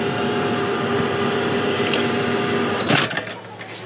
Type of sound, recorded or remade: recorded